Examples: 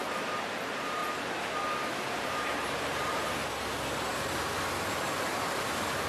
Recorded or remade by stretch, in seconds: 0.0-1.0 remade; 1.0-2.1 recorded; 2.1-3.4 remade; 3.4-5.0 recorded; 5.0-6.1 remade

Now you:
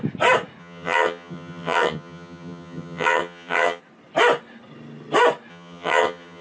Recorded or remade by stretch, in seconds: 0.0-0.6 recorded; 0.6-3.8 remade; 3.8-5.5 recorded; 5.5-6.4 remade

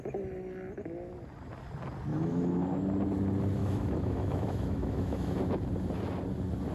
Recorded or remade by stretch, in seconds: 0.0-2.1 recorded; 2.1-2.6 remade; 2.6-3.6 recorded; 3.6-5.4 remade; 5.4-6.7 recorded

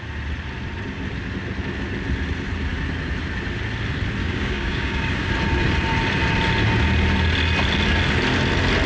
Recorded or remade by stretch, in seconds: 0.0-4.2 recorded; 4.2-5.3 remade; 5.3-8.9 recorded

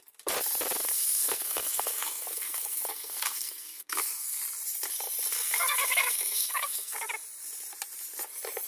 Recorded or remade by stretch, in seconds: 0.0-0.8 recorded; 0.8-4.4 remade; 4.4-5.3 recorded; 5.3-7.1 remade; 7.1-8.7 recorded

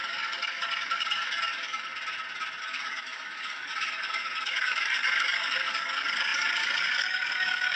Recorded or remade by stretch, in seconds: 0.0-1.9 remade; 1.9-2.6 recorded; 2.6-7.8 remade

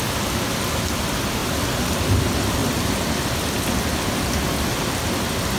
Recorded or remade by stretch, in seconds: 0.0-1.4 recorded; 1.4-2.1 remade; 2.1-5.6 recorded

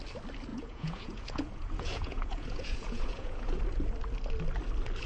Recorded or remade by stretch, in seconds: 0.0-0.5 recorded; 0.5-3.6 remade; 3.6-5.1 recorded